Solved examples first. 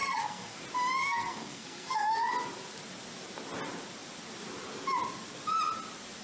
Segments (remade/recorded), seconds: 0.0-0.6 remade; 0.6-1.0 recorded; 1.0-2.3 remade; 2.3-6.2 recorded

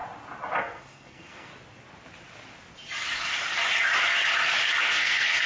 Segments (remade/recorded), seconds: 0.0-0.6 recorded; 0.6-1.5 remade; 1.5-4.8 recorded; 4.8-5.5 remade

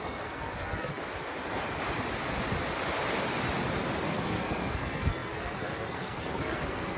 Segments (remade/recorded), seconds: 0.0-1.0 remade; 1.0-4.1 recorded; 4.1-7.0 remade

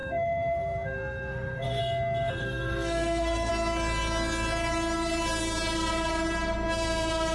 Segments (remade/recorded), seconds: 0.0-1.8 remade; 1.8-2.4 recorded; 2.4-3.5 remade; 3.5-7.3 recorded

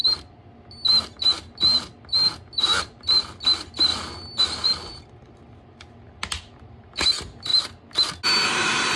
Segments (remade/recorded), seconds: 0.0-9.0 recorded

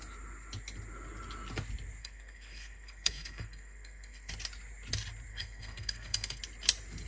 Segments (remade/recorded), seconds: 0.0-2.0 recorded; 2.0-4.3 remade; 4.3-5.3 recorded; 5.3-6.4 remade; 6.4-7.1 recorded